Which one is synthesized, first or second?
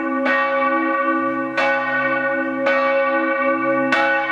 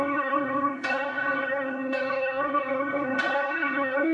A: second